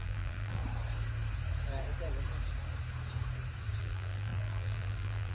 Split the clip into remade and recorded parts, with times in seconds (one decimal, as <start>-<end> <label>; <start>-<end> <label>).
0.0-0.6 remade; 0.6-3.8 recorded; 3.8-5.3 remade